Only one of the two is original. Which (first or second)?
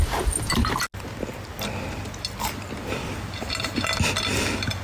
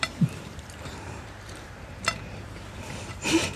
first